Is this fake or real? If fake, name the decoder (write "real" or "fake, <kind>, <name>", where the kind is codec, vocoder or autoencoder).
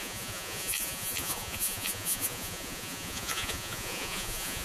fake, vocoder, Vocos